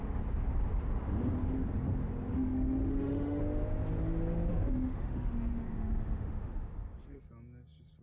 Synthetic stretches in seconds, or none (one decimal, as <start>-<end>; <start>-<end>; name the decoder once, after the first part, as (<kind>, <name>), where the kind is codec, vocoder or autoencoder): 2.3-3.4 (autoencoder, DAC-VAE); 4.5-7.2